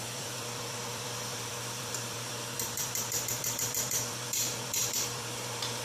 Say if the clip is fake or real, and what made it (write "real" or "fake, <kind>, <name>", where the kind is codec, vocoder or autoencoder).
fake, vocoder, BigVGAN v2